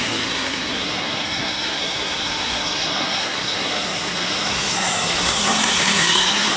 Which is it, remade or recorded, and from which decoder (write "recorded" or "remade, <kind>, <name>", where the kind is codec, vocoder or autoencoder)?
remade, codec, SNAC